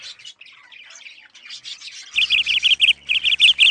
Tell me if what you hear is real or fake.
real